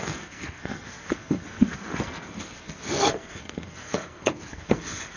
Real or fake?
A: fake